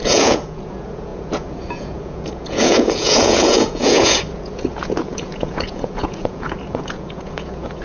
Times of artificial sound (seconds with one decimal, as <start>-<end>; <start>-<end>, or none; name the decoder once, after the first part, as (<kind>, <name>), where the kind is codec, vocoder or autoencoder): 0.0-7.8 (vocoder, Vocos)